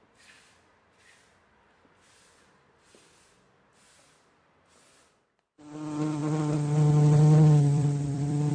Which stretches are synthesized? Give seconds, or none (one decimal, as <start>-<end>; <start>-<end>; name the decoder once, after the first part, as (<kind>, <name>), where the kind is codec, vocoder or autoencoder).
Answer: 6.2-8.5 (vocoder, BigVGAN v2)